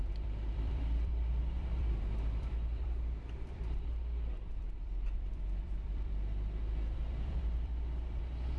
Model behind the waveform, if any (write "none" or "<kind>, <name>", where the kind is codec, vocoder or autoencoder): vocoder, BigVGAN v2